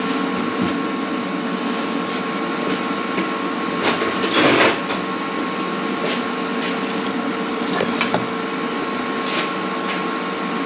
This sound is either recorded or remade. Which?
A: recorded